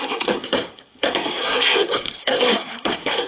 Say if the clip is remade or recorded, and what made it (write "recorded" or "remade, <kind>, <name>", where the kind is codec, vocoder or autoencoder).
remade, codec, SNAC